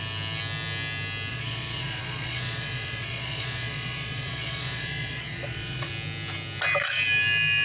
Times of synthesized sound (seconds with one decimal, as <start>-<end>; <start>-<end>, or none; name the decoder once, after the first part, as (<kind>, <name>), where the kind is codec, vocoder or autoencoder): 1.3-5.9 (vocoder, Vocos)